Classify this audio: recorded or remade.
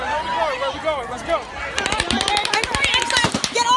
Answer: recorded